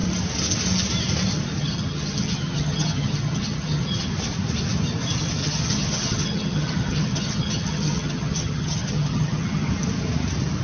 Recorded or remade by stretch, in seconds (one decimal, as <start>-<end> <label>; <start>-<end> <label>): 0.0-1.6 recorded; 1.6-4.1 remade; 4.1-5.4 recorded; 5.4-9.7 remade; 9.7-10.6 recorded